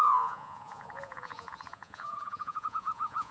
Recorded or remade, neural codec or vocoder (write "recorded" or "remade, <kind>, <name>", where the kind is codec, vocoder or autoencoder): remade, vocoder, Vocos